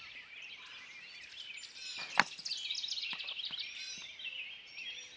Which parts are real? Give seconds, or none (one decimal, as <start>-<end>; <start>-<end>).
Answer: 0.0-5.2